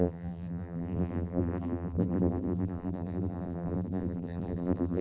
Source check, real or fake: fake